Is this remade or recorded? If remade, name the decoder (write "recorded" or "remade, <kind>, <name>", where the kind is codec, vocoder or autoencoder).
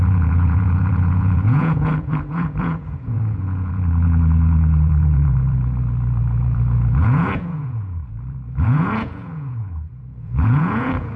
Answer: remade, vocoder, Vocos